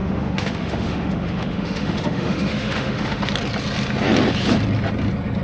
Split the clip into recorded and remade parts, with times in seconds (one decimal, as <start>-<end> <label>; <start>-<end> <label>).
0.0-3.2 remade; 3.2-5.4 recorded